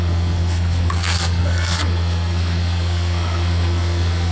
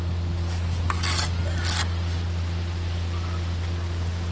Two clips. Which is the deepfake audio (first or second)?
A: first